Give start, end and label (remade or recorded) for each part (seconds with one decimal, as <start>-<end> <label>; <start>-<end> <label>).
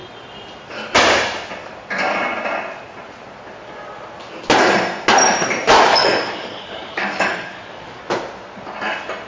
0.0-5.9 recorded; 5.9-8.0 remade; 8.0-9.3 recorded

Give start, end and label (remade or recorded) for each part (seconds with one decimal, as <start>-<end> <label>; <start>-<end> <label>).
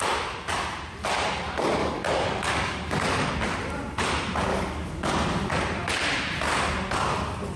0.0-1.8 recorded; 1.8-3.3 remade; 3.3-4.5 recorded; 4.5-5.1 remade; 5.1-7.6 recorded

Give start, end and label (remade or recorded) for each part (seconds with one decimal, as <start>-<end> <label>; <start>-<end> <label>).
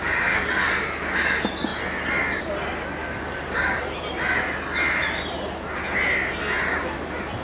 0.0-0.5 remade; 0.5-3.0 recorded; 3.0-3.9 remade; 3.9-7.4 recorded